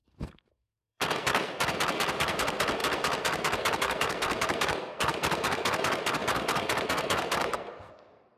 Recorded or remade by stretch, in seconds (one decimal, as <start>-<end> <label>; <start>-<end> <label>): 0.0-8.4 remade